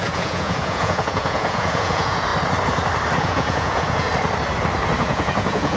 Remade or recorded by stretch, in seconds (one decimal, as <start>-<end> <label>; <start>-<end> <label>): 0.0-2.3 remade; 2.3-3.2 recorded; 3.2-4.1 remade; 4.1-5.0 recorded; 5.0-5.8 remade